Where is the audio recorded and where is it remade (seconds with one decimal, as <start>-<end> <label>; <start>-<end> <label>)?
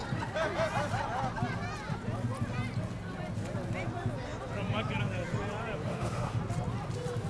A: 0.0-5.9 recorded; 5.9-6.4 remade; 6.4-7.3 recorded